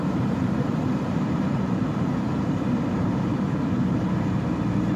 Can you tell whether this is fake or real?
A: fake